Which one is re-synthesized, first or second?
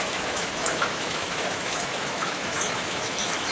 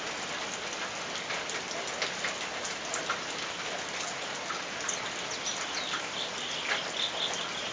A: first